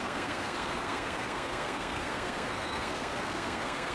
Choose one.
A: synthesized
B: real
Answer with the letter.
A